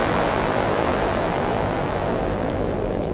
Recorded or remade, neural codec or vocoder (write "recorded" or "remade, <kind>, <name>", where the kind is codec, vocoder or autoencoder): remade, vocoder, BigVGAN v2